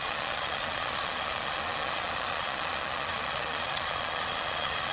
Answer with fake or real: fake